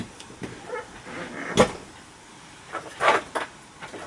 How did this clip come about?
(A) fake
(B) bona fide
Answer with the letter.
B